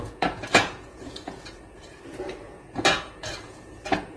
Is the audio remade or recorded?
remade